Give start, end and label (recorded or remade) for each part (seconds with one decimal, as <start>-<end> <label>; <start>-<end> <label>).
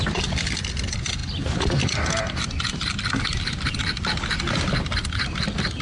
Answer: 0.0-3.8 remade; 3.8-4.5 recorded; 4.5-5.8 remade